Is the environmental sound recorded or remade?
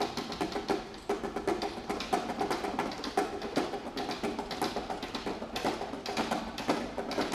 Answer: recorded